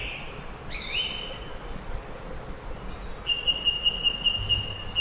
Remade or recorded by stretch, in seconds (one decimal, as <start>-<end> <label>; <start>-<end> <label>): 0.0-2.5 remade; 2.5-5.0 recorded